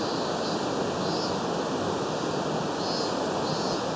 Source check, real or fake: real